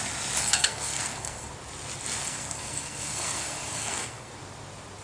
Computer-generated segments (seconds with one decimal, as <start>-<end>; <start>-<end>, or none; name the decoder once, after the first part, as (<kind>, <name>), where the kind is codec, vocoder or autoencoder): 0.4-1.5 (codec, SNAC); 2.2-4.3